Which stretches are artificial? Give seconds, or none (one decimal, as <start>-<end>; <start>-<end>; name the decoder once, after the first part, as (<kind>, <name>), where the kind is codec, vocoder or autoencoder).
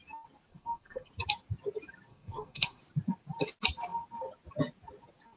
0.5-1.1 (codec, SNAC); 2.1-2.8